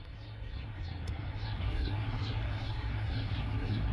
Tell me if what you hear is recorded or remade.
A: remade